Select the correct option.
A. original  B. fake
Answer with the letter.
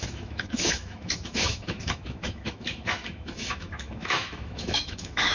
B